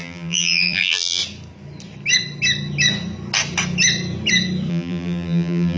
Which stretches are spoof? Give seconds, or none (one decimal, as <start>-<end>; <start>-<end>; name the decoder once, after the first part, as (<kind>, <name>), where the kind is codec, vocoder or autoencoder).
0.0-1.2 (vocoder, BigVGAN v2); 4.7-5.8